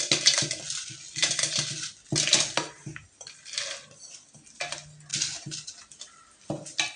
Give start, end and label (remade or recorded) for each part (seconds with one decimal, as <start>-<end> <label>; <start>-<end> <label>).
0.0-1.2 recorded; 1.2-1.9 remade; 1.9-5.1 recorded; 5.1-6.5 remade; 6.5-7.0 recorded